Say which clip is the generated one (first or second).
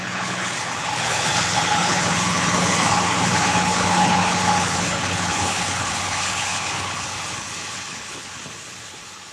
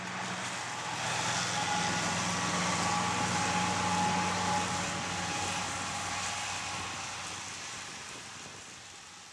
first